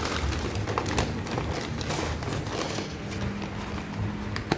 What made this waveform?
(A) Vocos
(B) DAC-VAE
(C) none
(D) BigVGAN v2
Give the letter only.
C